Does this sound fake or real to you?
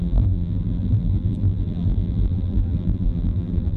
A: fake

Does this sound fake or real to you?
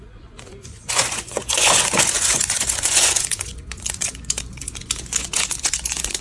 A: fake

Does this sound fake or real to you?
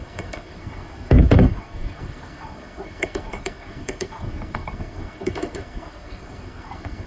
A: fake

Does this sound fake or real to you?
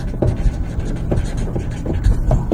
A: real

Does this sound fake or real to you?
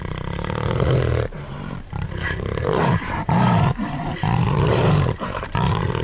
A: fake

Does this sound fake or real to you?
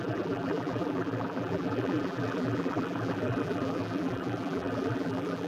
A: fake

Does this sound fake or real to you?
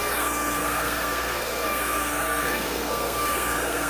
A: fake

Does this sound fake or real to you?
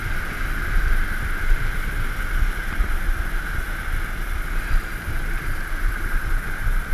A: real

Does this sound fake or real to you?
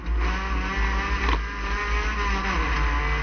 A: real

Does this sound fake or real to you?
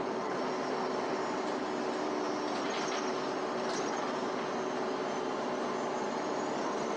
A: real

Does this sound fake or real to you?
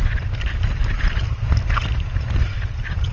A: real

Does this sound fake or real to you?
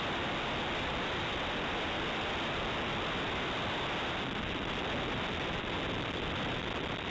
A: real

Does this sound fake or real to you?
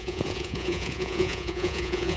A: fake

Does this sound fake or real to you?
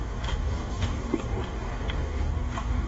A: fake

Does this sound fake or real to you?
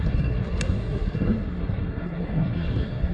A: fake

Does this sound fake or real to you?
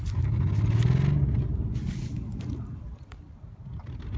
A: real